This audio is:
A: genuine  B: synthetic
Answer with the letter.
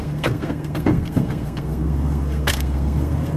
B